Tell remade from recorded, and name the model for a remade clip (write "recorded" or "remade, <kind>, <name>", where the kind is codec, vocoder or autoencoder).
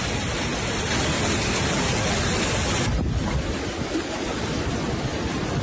remade, vocoder, BigVGAN v2